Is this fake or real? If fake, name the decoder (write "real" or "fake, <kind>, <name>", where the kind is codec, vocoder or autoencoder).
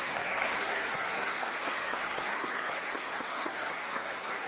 fake, codec, SNAC